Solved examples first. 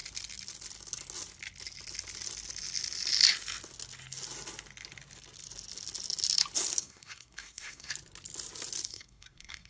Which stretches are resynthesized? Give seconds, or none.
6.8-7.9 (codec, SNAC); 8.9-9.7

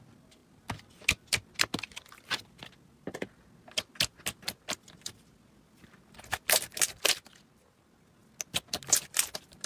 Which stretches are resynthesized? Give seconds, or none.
none